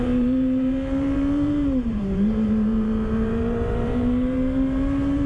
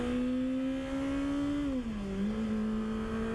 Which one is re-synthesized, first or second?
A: first